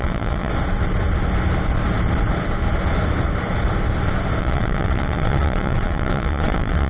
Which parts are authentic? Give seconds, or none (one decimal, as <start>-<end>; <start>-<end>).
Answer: 0.5-4.4

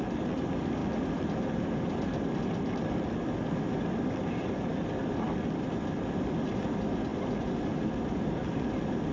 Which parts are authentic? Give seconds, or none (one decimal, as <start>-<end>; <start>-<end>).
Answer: 0.0-9.1

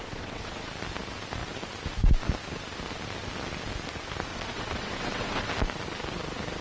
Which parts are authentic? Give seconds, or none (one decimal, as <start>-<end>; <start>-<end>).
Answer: 0.7-4.3; 5.5-6.6

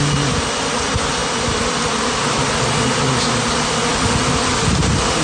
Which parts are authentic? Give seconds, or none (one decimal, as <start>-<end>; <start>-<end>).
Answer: 0.0-5.2